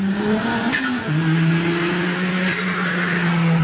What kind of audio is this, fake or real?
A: real